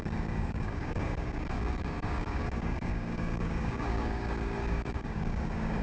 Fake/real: fake